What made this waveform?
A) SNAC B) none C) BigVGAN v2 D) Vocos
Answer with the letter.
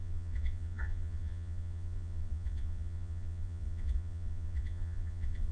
D